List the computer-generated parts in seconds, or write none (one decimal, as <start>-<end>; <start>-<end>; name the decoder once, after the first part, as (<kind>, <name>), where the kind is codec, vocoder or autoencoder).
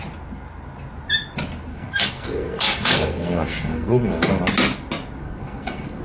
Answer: 1.7-4.4 (codec, SNAC); 5.2-6.0